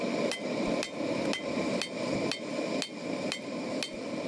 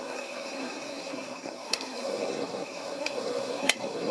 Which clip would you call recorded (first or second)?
first